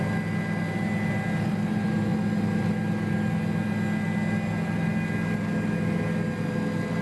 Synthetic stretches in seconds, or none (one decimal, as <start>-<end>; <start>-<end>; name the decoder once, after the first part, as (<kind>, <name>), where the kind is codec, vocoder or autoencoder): none